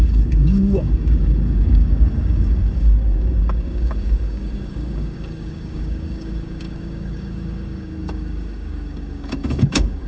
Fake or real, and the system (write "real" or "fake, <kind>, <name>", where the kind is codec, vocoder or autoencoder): fake, codec, DAC